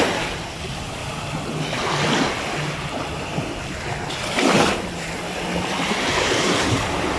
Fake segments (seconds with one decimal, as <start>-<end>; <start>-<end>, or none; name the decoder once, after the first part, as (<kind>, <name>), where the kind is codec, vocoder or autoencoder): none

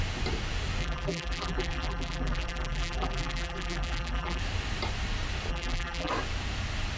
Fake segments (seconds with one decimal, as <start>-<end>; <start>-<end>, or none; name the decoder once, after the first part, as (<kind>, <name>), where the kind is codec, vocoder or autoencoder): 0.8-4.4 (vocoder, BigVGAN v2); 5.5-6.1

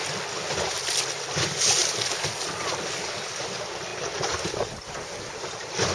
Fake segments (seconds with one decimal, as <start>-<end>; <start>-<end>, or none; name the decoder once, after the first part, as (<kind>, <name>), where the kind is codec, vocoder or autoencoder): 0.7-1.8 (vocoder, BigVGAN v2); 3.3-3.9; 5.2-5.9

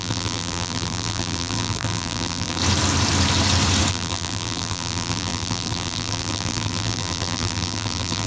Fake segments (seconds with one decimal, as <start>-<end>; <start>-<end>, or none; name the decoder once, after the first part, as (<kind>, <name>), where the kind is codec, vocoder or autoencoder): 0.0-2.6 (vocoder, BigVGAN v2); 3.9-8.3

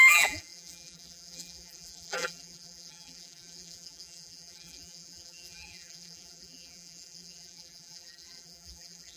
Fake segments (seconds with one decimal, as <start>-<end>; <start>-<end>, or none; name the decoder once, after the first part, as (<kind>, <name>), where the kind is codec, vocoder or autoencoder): 0.0-9.2 (vocoder, BigVGAN v2)

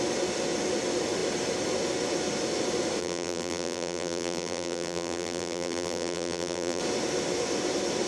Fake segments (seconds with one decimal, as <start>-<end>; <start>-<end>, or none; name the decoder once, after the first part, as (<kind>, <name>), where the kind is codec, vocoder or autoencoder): 3.0-6.8 (vocoder, BigVGAN v2)